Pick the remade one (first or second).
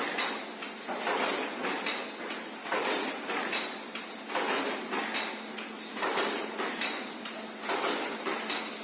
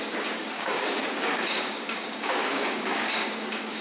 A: second